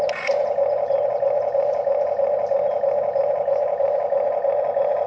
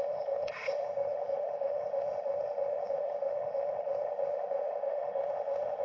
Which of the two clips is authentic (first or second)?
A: first